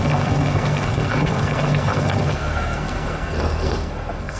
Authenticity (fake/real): fake